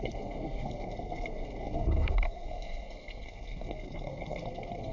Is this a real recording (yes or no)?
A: no